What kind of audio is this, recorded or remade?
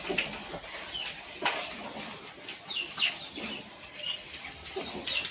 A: recorded